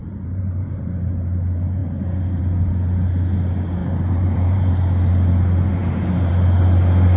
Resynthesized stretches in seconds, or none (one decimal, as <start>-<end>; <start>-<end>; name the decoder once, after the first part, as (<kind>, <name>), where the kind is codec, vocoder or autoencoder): 0.0-0.8 (vocoder, BigVGAN v2); 3.8-4.7